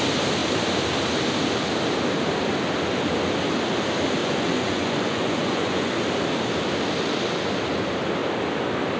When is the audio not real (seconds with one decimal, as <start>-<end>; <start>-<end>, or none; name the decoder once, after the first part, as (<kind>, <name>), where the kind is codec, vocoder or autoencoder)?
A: 4.2-5.9 (vocoder, Vocos)